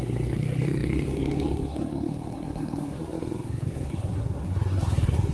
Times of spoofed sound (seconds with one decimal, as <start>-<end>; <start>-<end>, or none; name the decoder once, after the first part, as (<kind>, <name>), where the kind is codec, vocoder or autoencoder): 0.0-5.3 (codec, SNAC)

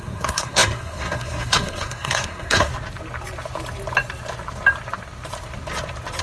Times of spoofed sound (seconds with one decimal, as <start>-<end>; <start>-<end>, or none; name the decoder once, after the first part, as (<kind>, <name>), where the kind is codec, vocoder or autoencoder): 0.0-2.7 (codec, SNAC)